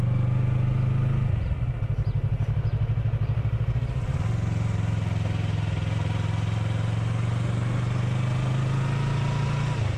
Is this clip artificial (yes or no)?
no